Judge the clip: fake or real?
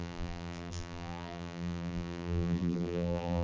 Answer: fake